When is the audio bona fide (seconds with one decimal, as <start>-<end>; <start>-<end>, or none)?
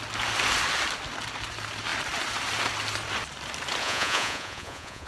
0.0-3.8